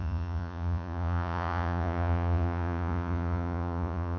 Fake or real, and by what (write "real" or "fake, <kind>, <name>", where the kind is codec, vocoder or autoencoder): fake, vocoder, Vocos